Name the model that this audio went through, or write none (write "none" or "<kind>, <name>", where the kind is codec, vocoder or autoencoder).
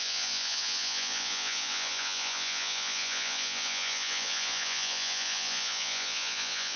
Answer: vocoder, Vocos